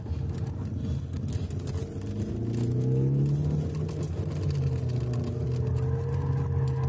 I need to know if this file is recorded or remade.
recorded